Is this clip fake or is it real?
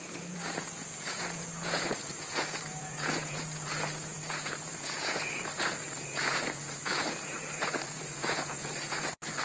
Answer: fake